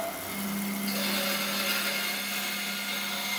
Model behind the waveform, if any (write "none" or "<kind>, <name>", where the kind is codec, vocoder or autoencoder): none